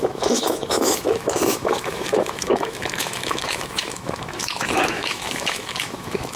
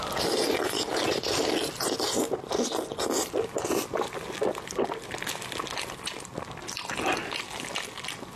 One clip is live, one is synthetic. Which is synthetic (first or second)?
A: first